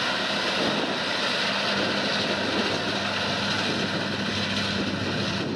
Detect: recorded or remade recorded